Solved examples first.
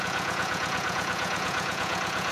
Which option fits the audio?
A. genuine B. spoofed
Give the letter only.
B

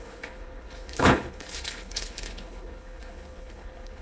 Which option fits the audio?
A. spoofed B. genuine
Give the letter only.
A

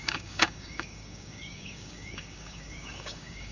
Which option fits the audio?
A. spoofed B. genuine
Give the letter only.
A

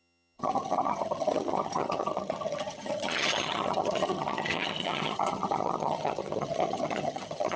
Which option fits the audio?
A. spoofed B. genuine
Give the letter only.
A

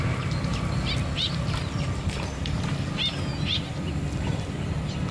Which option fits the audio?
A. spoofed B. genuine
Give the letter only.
B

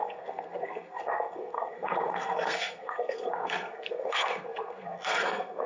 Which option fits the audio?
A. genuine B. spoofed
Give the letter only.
B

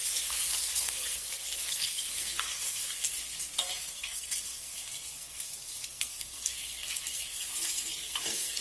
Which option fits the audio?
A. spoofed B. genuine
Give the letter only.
A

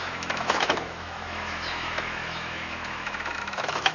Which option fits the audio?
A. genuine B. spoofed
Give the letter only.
B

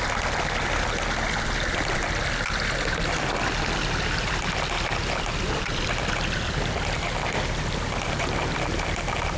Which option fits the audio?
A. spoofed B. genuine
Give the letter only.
B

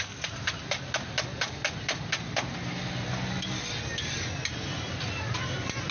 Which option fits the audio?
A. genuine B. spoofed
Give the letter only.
A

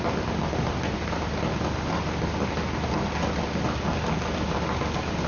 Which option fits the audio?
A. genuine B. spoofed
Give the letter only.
A